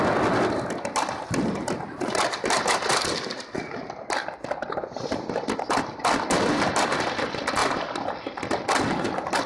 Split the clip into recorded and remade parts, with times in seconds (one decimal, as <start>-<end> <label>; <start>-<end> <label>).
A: 0.0-9.5 recorded